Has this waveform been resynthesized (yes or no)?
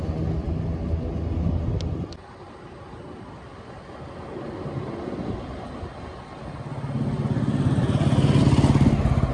no